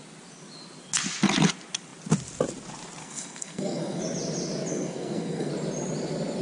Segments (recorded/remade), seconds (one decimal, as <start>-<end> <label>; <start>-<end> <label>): 0.0-3.0 recorded; 3.0-4.0 remade; 4.0-4.7 recorded; 4.7-5.5 remade; 5.5-6.4 recorded